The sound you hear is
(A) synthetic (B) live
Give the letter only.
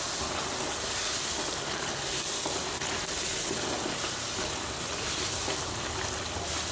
B